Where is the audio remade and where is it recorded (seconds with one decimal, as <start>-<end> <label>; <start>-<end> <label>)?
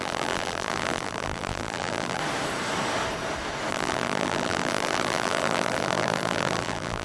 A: 0.0-2.2 remade; 2.2-3.7 recorded; 3.7-7.0 remade